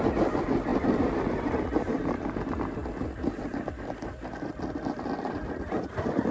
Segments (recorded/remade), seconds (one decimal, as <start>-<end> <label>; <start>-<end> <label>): 0.0-0.7 recorded; 0.7-1.9 remade; 1.9-2.8 recorded; 2.8-4.5 remade; 4.5-6.3 recorded